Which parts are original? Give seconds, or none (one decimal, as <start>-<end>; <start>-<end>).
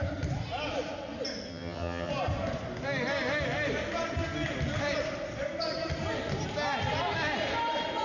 0.0-1.5; 2.1-8.0